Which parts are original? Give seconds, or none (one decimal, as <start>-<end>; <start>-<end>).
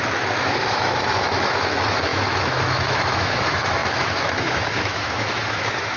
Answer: none